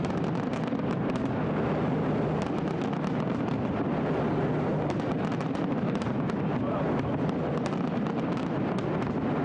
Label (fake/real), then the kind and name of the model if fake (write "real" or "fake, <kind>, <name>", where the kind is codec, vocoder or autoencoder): real